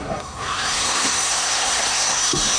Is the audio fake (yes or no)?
yes